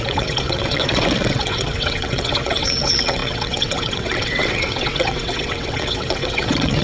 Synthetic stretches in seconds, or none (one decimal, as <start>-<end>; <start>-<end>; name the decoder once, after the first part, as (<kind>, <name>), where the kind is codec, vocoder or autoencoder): 0.0-6.8 (vocoder, WaveNeXt)